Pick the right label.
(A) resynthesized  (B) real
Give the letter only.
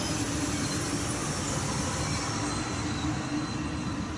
B